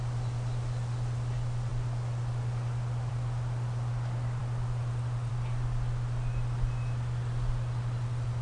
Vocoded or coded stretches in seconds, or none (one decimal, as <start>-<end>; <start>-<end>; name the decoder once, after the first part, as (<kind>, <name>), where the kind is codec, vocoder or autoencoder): none